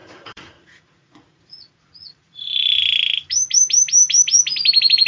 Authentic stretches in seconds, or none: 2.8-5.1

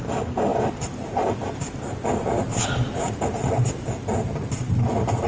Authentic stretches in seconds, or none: 0.0-2.2; 3.1-5.3

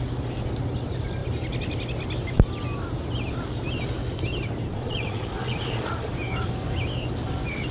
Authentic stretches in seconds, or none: 0.0-4.7; 6.1-7.7

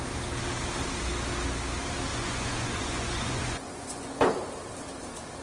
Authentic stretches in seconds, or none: 0.0-2.1; 4.3-5.4

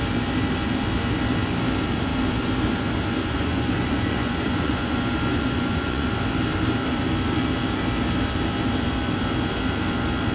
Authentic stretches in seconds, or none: 0.0-3.2; 6.1-10.3

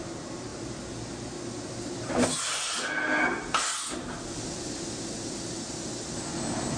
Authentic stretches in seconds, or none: 0.0-6.8

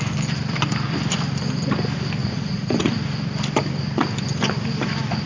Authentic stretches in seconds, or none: 0.0-2.2; 2.9-5.3

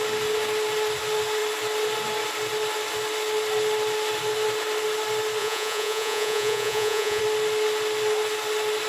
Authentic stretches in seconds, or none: 0.0-5.4; 7.2-8.9